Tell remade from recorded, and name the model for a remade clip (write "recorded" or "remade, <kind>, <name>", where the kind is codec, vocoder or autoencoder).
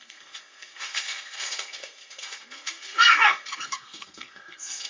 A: remade, codec, SNAC